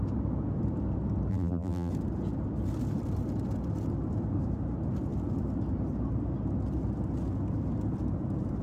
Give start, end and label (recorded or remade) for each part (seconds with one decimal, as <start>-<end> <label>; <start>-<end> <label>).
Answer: 0.0-1.3 recorded; 1.3-1.9 remade; 1.9-8.6 recorded

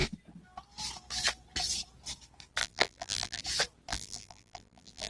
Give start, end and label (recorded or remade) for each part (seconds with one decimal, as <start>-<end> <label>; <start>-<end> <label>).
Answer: 0.0-2.6 recorded; 2.6-3.4 remade; 3.4-3.9 recorded; 3.9-5.1 remade

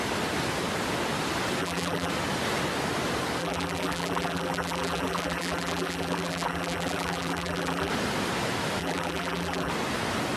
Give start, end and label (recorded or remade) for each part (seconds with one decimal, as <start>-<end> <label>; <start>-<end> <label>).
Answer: 0.0-1.6 recorded; 1.6-2.1 remade; 2.1-3.4 recorded; 3.4-7.9 remade; 7.9-8.8 recorded; 8.8-9.7 remade; 9.7-10.4 recorded

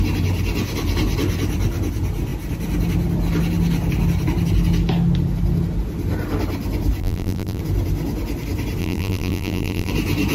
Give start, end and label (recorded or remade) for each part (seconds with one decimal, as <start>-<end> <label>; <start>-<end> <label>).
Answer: 0.0-7.0 recorded; 7.0-7.6 remade; 7.6-8.8 recorded; 8.8-9.9 remade; 9.9-10.3 recorded